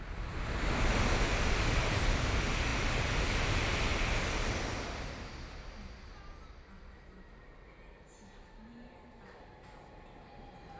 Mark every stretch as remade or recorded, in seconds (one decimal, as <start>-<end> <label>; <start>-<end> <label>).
0.0-10.8 recorded